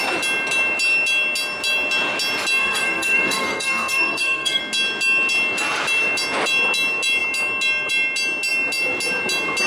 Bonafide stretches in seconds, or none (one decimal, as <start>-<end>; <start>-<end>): 0.0-2.6; 4.6-9.7